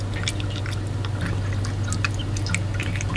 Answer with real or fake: real